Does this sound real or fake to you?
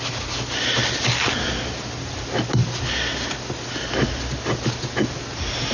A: real